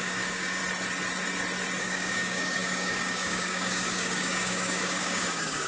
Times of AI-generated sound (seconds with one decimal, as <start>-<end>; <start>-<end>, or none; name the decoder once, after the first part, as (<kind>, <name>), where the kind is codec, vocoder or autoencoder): 0.0-0.6 (codec, DAC); 1.8-5.7